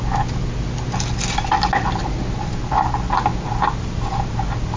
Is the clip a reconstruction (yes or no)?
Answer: no